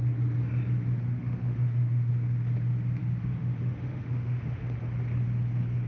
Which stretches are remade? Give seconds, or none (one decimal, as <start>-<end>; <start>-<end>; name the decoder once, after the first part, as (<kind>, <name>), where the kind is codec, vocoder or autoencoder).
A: 1.0-2.1 (autoencoder, DAC-VAE); 3.0-4.8